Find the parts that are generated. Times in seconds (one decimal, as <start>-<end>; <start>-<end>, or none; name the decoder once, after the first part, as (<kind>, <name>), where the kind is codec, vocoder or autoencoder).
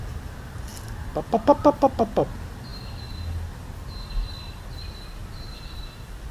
0.7-2.0 (vocoder, BigVGAN v2); 5.2-6.3